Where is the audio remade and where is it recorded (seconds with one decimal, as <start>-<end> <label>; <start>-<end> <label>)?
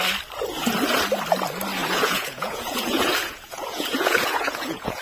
0.0-1.8 recorded; 1.8-5.0 remade